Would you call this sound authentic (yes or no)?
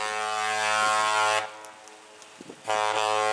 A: yes